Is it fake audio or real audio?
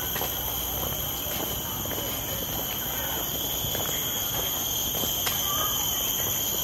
real